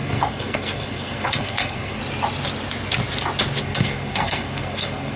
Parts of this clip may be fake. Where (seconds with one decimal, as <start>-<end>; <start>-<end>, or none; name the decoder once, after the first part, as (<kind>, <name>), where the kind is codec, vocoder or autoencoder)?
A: 0.0-2.0 (codec, SNAC); 3.6-5.2